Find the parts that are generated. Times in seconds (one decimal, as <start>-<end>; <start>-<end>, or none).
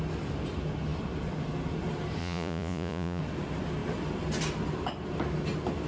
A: 2.2-3.2